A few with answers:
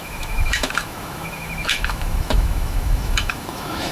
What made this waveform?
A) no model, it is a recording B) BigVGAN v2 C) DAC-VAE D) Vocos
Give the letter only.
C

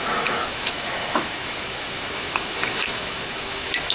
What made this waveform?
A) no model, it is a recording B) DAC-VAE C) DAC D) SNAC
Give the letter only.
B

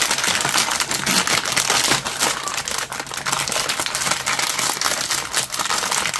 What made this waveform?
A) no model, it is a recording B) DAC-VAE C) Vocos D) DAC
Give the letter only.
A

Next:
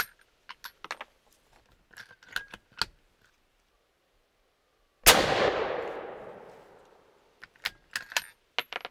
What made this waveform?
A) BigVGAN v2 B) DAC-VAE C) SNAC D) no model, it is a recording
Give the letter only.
D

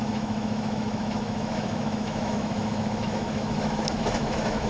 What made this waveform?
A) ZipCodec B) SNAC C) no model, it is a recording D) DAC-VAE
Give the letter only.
D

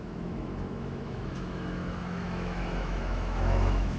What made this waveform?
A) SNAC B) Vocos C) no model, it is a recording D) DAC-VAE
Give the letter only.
D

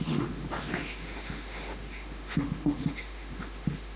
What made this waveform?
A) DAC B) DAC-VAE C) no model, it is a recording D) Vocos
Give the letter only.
B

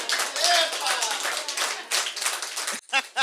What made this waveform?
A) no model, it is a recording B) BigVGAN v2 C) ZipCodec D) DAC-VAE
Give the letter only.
A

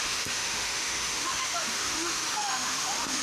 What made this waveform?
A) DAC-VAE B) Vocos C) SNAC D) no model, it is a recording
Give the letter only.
A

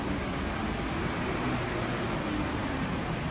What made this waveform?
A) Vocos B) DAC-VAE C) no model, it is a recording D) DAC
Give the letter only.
C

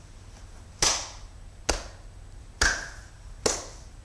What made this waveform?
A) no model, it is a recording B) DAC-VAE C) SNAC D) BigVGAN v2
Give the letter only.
A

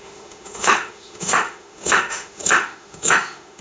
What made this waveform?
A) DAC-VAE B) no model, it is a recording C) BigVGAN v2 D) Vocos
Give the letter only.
A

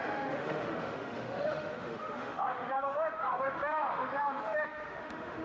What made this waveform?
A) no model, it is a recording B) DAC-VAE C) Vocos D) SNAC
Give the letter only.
B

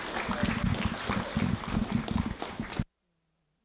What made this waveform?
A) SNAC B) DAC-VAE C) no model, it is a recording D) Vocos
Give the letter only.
C